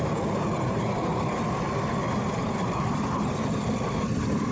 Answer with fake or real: real